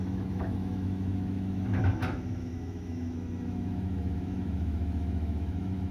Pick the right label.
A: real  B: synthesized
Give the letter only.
B